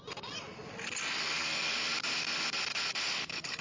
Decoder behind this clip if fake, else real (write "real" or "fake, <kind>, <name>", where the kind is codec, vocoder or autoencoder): real